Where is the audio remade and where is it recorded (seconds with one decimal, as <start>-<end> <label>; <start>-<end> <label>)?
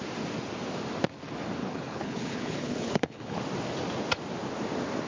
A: 0.0-1.6 recorded; 1.6-3.4 remade; 3.4-5.1 recorded